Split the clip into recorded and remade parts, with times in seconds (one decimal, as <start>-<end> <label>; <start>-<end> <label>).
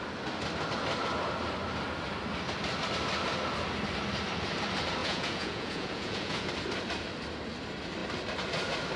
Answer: 0.0-5.0 recorded; 5.0-6.5 remade; 6.5-9.0 recorded